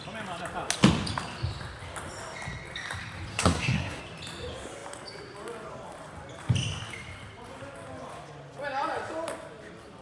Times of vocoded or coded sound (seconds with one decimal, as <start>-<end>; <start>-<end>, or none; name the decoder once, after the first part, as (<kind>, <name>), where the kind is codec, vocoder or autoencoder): 3.3-4.0 (codec, SNAC)